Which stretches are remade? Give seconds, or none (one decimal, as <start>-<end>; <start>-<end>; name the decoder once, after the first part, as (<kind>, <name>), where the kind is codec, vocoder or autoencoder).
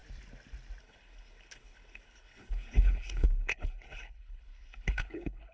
0.8-5.5 (codec, HILCodec)